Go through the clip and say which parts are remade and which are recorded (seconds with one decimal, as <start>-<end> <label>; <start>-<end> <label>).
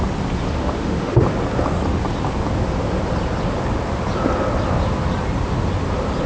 0.0-0.6 recorded; 0.6-1.2 remade; 1.2-6.3 recorded